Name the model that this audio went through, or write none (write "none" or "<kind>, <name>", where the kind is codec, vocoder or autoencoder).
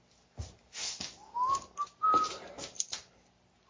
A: none